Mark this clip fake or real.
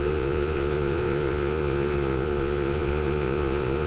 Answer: fake